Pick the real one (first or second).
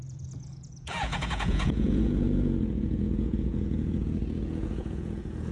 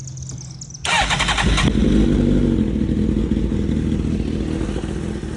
second